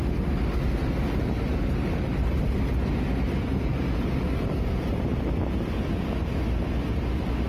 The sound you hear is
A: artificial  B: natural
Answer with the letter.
B